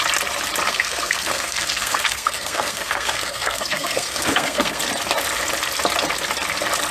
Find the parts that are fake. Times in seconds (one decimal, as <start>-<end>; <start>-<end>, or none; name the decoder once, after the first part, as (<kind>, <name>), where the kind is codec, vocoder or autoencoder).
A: 0.7-4.8 (codec, SNAC)